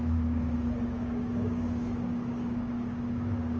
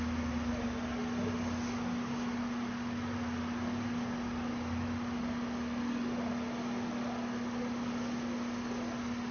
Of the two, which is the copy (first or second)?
first